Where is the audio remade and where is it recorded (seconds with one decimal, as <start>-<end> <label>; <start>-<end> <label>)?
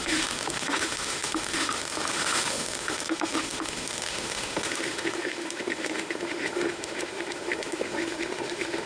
0.0-8.9 remade